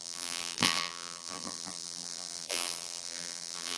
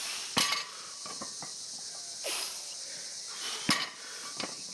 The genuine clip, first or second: second